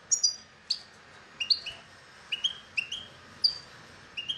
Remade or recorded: recorded